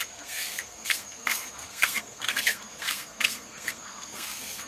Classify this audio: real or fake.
fake